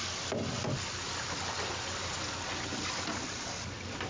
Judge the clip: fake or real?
real